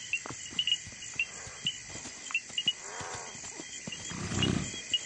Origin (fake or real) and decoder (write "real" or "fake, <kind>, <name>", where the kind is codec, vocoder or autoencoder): fake, vocoder, BigVGAN v2